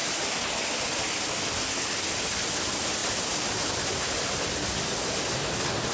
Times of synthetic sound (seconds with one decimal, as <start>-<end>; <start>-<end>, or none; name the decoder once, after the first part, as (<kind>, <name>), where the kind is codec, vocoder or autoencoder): 0.0-1.7 (vocoder, BigVGAN v2); 3.0-3.7